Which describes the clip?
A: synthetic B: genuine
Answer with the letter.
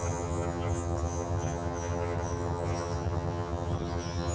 A